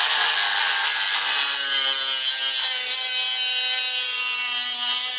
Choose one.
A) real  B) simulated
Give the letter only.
A